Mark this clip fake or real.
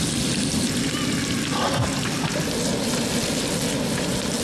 real